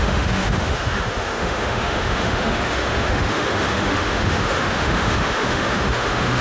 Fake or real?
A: fake